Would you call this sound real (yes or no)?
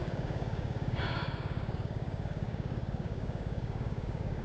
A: no